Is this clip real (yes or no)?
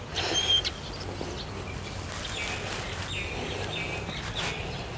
yes